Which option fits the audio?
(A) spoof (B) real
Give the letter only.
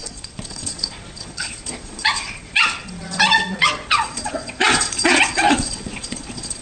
A